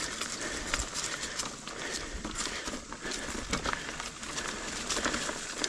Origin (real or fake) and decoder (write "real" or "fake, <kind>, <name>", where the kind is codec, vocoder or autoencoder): real